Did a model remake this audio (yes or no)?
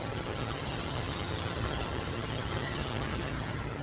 yes